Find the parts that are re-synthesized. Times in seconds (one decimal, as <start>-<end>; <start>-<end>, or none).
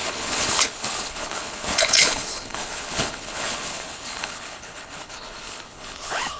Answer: 0.0-6.4